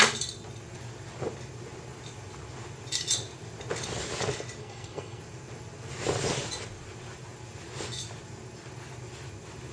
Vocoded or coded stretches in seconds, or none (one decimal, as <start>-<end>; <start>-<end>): 4.6-5.2